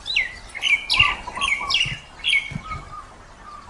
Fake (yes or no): no